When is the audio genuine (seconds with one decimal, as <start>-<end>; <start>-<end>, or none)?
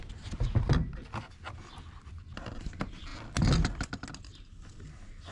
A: 0.0-5.3